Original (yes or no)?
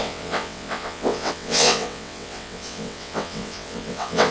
no